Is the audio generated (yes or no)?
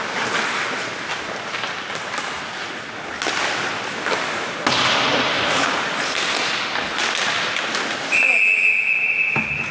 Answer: no